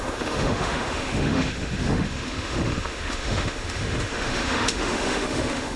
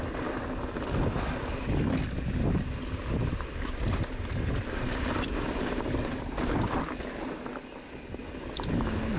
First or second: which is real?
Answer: second